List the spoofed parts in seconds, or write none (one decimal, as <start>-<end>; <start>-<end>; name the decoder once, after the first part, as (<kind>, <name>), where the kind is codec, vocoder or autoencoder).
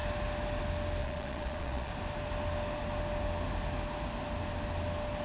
1.0-1.9 (vocoder, Vocos)